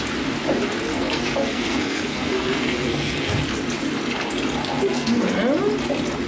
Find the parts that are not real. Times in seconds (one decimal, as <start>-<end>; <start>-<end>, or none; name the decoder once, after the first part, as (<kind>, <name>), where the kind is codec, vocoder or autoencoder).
0.9-3.4 (codec, SNAC); 4.6-5.3